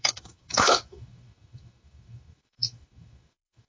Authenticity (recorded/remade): remade